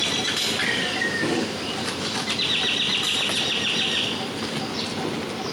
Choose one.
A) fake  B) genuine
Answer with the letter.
B